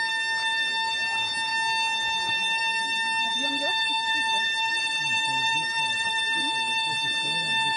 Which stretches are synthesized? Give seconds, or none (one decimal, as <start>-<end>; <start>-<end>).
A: 3.3-6.1